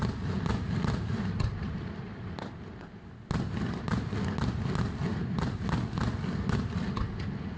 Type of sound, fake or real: real